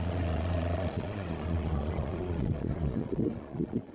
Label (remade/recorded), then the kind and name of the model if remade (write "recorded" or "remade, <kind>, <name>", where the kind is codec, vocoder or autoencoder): remade, vocoder, Vocos